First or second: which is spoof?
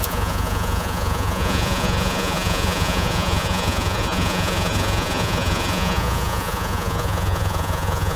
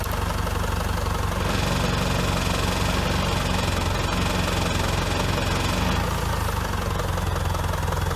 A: first